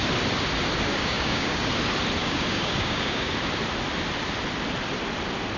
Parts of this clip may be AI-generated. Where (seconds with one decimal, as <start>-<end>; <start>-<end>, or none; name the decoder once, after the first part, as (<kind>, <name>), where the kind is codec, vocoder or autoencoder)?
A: 0.9-1.7 (codec, DAC); 2.2-3.3